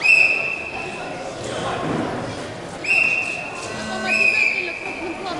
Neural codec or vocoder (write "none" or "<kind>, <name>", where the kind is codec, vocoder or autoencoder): none